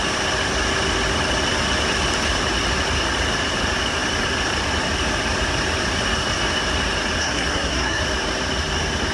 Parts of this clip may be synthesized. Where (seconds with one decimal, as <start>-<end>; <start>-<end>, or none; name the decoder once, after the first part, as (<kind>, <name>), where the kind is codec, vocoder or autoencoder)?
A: 7.2-8.0 (codec, SNAC)